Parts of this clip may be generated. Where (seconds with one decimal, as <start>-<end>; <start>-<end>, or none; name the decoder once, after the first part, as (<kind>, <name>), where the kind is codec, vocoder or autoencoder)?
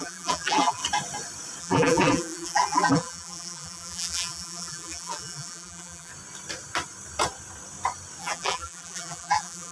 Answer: 0.0-0.8 (vocoder, BigVGAN v2); 1.6-6.1; 8.2-9.7